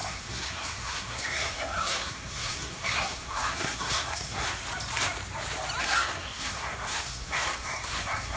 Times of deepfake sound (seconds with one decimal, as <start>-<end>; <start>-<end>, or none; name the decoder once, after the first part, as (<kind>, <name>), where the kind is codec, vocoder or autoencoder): 0.0-4.6 (codec, SNAC); 5.8-8.4